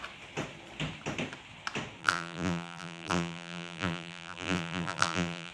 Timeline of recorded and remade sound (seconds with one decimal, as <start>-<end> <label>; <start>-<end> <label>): 0.0-2.0 recorded; 2.0-5.5 remade